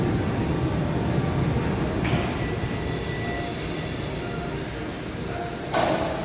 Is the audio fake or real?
real